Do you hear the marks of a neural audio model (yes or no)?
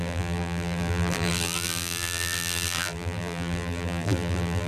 yes